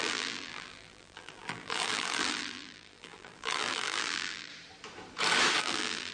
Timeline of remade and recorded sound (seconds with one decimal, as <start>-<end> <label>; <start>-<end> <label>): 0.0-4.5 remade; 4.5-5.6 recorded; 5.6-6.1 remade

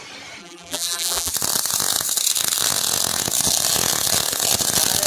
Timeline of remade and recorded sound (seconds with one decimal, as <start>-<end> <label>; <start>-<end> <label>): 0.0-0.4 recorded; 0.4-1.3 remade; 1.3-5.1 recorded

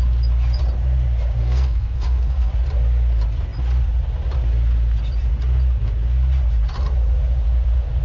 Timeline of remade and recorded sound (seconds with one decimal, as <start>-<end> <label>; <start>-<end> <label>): 0.0-1.4 recorded; 1.4-2.5 remade; 2.5-8.0 recorded

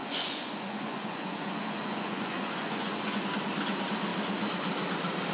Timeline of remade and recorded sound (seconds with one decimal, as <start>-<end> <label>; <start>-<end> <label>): 0.0-3.2 remade; 3.2-5.3 recorded

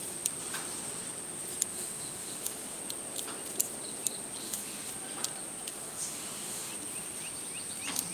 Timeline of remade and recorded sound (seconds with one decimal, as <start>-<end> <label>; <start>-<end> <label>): 0.0-1.7 recorded; 1.7-2.8 remade; 2.8-4.4 recorded; 4.4-4.9 remade; 4.9-5.7 recorded; 5.7-6.7 remade; 6.7-8.1 recorded